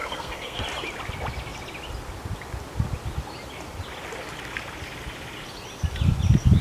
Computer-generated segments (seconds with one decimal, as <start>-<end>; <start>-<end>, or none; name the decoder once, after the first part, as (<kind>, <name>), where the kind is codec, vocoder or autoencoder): 0.0-0.6 (codec, SNAC)